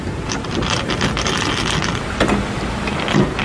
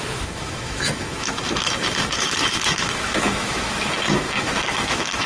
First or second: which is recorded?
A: first